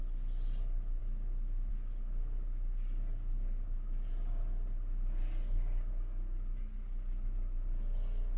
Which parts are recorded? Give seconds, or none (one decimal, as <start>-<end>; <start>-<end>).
0.0-8.4